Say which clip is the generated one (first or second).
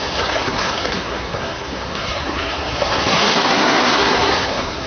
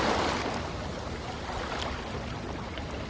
first